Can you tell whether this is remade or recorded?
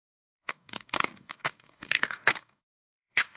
remade